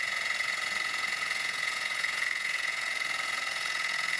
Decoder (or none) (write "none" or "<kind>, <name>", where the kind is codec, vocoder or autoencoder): vocoder, Vocos